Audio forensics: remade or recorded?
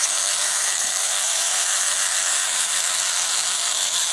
remade